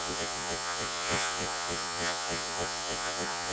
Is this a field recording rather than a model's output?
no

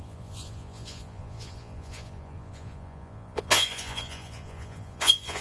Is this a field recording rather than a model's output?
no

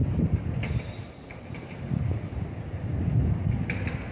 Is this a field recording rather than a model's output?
yes